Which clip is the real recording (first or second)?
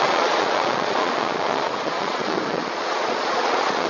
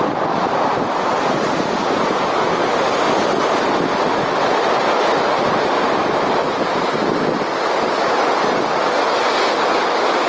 second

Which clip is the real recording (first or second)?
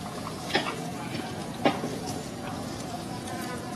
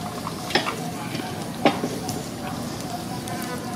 second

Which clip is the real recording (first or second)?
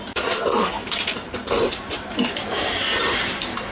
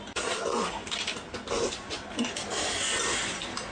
second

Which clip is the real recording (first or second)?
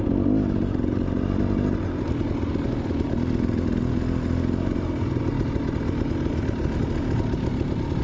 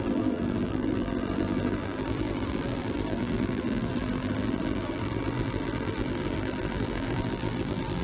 first